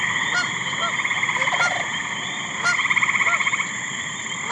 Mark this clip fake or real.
real